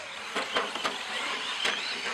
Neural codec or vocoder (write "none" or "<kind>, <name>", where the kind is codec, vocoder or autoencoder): none